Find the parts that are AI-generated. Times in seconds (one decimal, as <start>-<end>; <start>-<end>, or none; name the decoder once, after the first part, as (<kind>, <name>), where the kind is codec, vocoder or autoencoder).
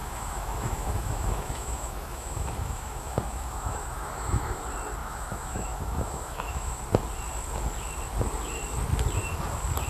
0.0-4.6 (autoencoder, DAC-VAE); 5.0-6.8